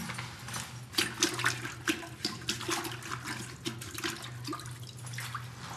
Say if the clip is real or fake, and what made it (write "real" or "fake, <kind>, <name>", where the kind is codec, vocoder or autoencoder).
real